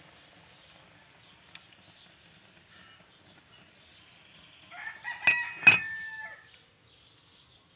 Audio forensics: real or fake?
real